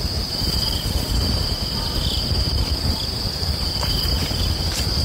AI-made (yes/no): yes